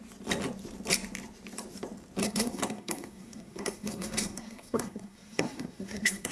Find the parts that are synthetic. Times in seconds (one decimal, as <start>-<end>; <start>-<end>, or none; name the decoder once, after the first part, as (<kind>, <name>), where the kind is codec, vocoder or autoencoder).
2.2-6.3 (codec, SNAC)